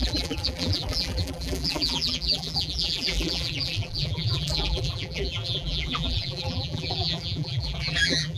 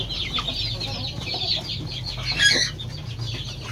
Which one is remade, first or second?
first